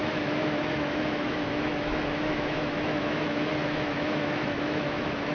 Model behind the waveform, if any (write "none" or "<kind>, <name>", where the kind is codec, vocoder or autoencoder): autoencoder, DAC-VAE